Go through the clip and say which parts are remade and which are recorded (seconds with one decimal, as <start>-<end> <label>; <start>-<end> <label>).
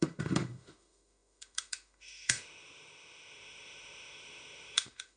0.0-5.2 remade